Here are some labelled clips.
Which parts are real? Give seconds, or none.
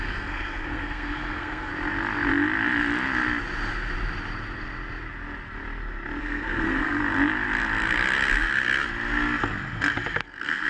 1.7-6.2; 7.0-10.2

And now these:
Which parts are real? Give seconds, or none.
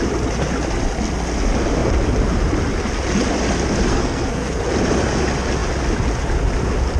0.0-3.9; 4.6-7.0